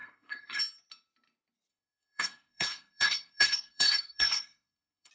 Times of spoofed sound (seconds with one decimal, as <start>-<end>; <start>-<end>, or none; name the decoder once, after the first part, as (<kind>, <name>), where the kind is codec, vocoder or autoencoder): 0.0-0.6 (codec, SNAC); 1.7-5.1